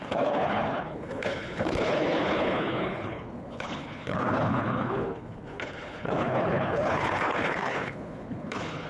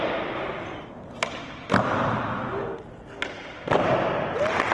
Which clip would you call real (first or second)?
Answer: second